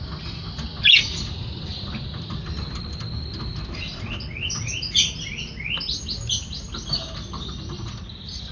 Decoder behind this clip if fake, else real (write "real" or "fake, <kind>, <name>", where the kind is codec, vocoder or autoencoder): real